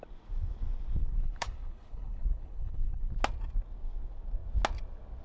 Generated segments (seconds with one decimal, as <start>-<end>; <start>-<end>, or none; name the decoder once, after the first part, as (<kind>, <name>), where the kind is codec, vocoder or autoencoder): 1.0-3.1 (codec, HILCodec)